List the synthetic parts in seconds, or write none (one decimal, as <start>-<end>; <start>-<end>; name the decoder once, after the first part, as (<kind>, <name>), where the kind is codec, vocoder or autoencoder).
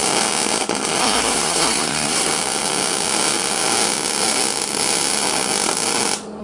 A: 1.0-2.3 (codec, SNAC)